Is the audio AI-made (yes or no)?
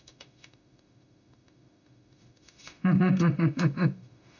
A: yes